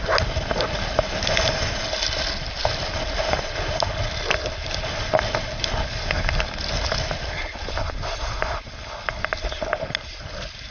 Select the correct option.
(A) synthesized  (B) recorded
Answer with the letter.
B